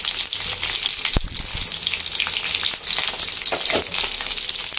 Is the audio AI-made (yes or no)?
no